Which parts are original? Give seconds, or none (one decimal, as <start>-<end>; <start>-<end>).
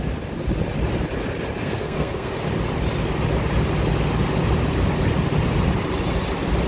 0.0-1.6; 2.3-6.7